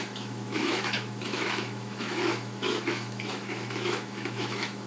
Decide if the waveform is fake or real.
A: fake